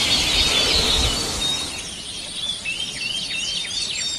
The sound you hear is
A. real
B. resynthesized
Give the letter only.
A